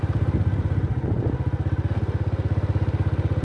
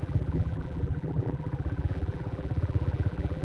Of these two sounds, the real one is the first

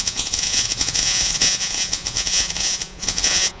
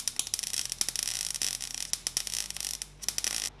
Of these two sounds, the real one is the second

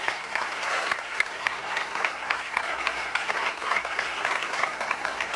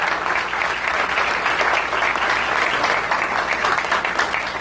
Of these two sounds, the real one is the second